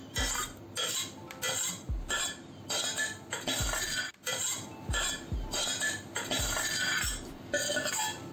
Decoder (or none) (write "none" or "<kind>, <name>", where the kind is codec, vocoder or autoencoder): none